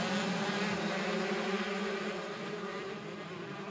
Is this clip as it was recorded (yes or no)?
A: yes